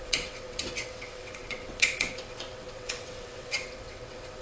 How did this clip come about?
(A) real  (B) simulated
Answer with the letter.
B